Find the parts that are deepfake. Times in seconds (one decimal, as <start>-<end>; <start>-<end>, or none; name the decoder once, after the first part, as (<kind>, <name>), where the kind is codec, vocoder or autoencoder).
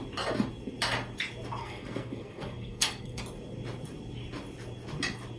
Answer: 1.6-3.2 (codec, SNAC)